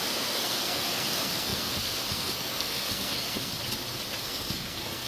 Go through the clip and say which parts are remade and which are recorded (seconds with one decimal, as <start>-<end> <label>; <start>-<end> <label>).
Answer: 0.0-3.5 remade; 3.5-4.2 recorded; 4.2-5.1 remade